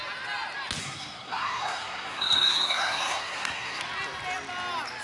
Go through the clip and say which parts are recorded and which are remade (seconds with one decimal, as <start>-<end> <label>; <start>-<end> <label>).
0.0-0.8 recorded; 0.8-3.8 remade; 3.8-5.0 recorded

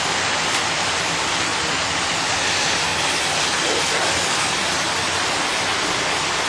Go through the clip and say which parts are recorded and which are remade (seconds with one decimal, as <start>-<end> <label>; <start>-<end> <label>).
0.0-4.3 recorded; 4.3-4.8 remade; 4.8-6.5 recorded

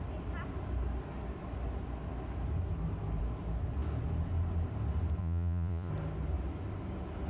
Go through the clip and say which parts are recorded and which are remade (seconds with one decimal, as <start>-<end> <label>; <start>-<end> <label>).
0.0-5.2 recorded; 5.2-5.9 remade; 5.9-7.3 recorded

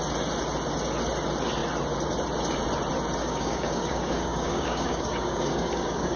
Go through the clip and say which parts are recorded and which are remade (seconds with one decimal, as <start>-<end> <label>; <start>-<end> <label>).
0.0-3.2 recorded; 3.2-6.2 remade

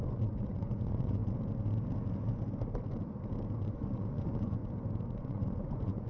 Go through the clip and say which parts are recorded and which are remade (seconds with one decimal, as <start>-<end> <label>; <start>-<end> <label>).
0.0-1.2 remade; 1.2-3.6 recorded; 3.6-4.6 remade; 4.6-5.2 recorded; 5.2-6.1 remade

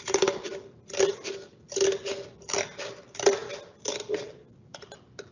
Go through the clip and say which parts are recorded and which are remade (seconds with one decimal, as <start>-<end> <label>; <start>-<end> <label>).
0.0-5.3 recorded